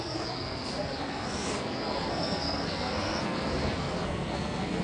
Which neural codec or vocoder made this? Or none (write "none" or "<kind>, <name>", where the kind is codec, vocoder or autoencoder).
codec, SNAC